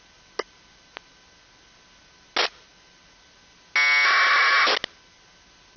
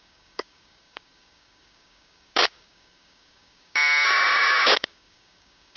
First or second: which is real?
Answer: first